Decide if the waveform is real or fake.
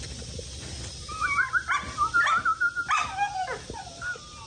real